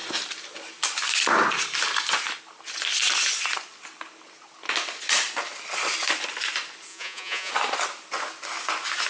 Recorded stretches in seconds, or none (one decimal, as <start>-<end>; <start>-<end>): 0.0-6.9; 7.5-9.1